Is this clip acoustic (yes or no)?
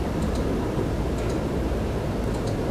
yes